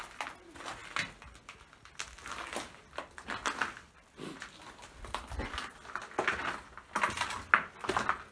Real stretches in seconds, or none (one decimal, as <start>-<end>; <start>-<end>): 0.0-8.3